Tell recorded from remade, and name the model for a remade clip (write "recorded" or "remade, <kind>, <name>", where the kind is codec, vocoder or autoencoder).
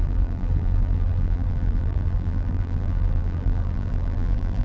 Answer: remade, vocoder, BigVGAN v2